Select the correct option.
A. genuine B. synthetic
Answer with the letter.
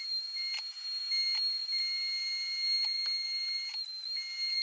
B